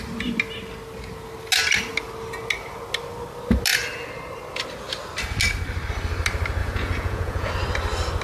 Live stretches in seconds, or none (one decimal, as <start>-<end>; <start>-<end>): 0.0-6.6; 7.5-8.2